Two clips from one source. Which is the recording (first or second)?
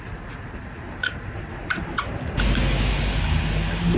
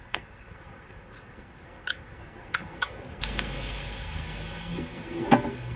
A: first